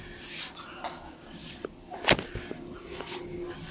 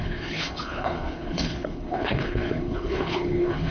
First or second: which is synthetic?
second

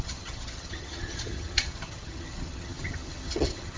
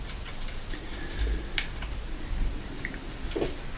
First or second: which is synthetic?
first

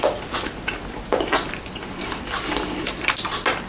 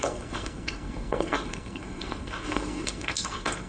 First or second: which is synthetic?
second